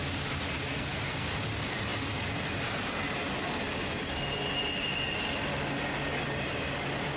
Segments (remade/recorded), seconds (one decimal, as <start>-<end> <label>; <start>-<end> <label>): 0.0-0.7 recorded; 0.7-1.3 remade; 1.3-7.2 recorded